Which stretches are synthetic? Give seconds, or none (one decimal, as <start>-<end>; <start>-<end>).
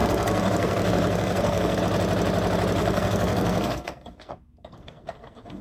0.0-1.8; 2.8-5.6